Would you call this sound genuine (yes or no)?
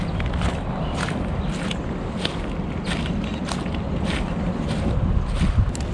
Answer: yes